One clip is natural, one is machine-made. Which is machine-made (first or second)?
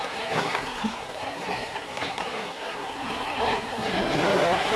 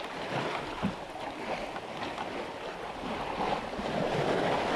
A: first